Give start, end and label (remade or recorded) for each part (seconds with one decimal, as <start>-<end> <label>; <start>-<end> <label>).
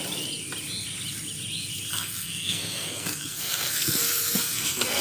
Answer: 0.0-1.9 recorded; 1.9-5.0 remade